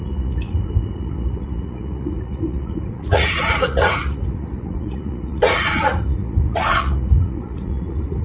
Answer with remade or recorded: remade